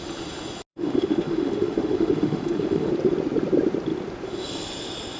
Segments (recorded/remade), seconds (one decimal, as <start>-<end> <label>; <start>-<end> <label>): 0.0-0.7 recorded; 0.7-2.9 remade; 2.9-5.2 recorded